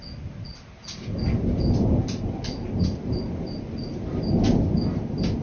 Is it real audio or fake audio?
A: real